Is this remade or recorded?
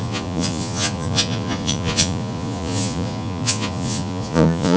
remade